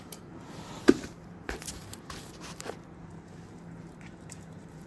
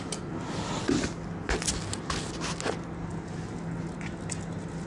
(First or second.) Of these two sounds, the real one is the second